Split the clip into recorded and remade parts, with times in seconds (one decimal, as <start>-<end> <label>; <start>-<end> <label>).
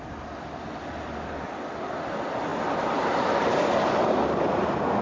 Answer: 0.0-2.5 recorded; 2.5-3.7 remade; 3.7-5.0 recorded